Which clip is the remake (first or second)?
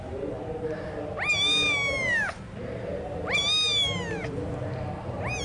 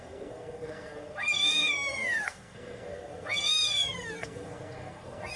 second